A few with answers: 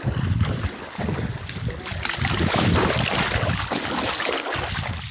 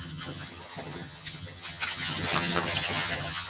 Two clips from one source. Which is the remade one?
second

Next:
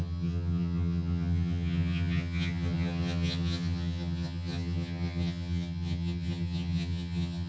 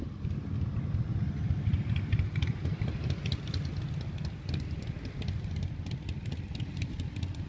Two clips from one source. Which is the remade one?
first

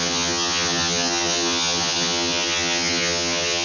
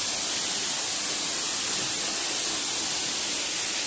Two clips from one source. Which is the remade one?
first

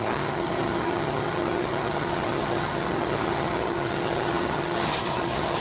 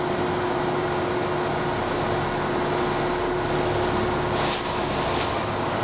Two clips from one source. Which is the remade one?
first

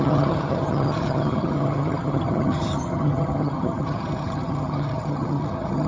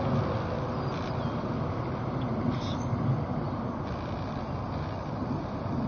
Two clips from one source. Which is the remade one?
first